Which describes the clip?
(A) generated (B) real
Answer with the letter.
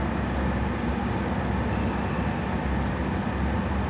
B